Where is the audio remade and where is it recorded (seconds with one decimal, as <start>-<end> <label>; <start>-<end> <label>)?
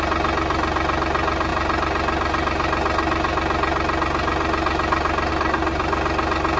0.0-6.6 recorded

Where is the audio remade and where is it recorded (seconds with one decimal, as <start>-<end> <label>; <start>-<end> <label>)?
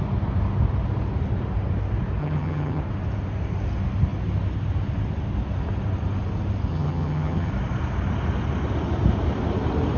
0.0-2.2 recorded; 2.2-2.8 remade; 2.8-6.7 recorded; 6.7-7.5 remade; 7.5-10.0 recorded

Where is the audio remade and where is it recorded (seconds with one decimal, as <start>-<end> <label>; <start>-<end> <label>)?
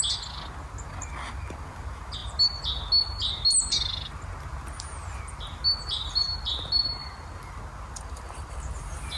0.0-9.2 recorded